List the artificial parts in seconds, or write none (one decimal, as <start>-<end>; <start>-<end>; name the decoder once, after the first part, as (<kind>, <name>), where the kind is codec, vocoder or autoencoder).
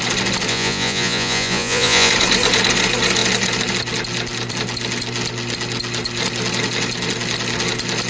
0.5-2.1 (vocoder, Vocos)